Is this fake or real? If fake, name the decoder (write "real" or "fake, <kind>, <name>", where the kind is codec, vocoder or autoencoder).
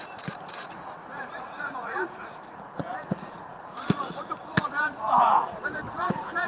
fake, vocoder, Vocos